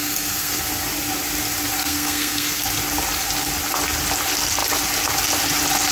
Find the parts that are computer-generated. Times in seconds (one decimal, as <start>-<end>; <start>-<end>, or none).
0.0-0.6; 1.8-2.6